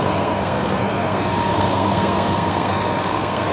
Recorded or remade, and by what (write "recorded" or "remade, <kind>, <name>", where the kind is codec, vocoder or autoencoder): remade, codec, SNAC